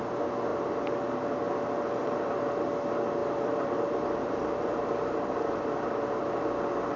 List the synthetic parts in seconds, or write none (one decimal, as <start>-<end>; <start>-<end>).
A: 2.0-2.5; 3.2-5.6